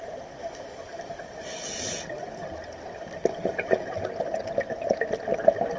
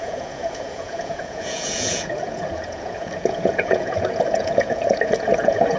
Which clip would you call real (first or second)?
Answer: first